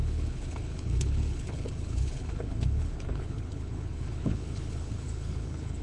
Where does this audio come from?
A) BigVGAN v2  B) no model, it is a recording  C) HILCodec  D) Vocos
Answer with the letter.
C